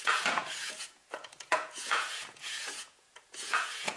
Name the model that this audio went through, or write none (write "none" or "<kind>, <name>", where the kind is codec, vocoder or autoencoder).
vocoder, Vocos